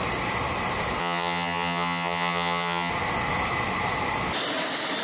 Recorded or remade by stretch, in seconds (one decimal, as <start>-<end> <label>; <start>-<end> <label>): 0.0-1.0 recorded; 1.0-2.9 remade; 2.9-5.0 recorded